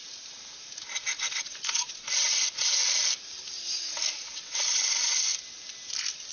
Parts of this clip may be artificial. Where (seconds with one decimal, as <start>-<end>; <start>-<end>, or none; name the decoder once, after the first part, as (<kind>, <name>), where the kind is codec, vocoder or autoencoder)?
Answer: 0.9-2.8 (vocoder, Vocos); 4.2-5.3